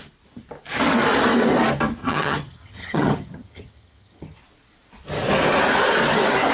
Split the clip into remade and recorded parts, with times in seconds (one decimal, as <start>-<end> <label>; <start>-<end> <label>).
0.0-2.0 recorded; 2.0-4.4 remade; 4.4-6.5 recorded